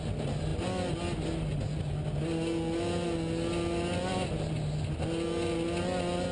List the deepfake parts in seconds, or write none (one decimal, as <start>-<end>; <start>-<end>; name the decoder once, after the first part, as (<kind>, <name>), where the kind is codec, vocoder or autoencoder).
none